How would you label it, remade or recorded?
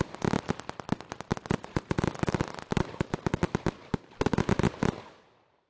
recorded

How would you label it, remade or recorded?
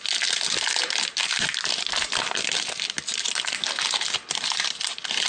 recorded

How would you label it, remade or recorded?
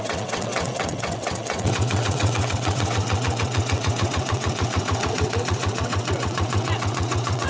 remade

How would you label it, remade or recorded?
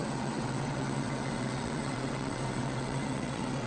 remade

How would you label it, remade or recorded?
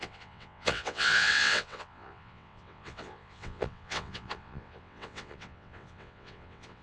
remade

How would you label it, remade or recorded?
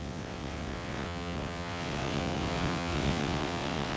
remade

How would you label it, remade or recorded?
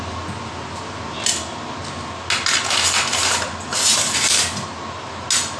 recorded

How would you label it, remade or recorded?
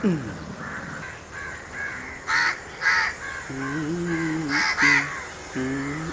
recorded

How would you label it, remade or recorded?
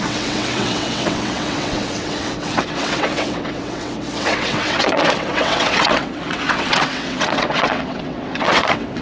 remade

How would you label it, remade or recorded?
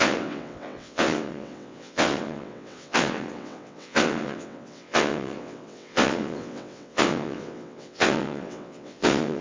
remade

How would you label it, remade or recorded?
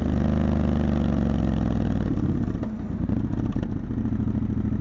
recorded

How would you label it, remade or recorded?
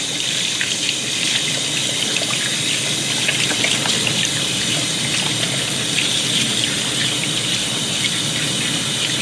recorded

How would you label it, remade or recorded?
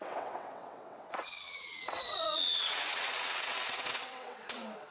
remade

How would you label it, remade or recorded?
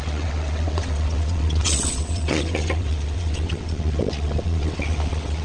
remade